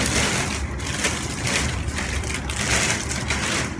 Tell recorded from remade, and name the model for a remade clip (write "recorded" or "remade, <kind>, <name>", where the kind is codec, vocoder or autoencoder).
recorded